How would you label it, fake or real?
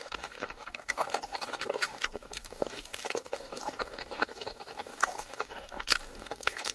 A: fake